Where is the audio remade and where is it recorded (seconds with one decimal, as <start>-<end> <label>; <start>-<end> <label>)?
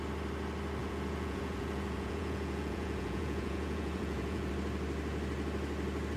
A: 0.0-0.8 recorded; 0.8-4.5 remade; 4.5-6.2 recorded